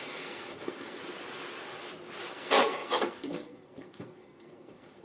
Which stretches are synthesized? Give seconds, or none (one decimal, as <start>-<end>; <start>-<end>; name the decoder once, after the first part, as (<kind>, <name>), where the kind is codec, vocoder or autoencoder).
0.0-1.0 (codec, SNAC); 2.3-5.0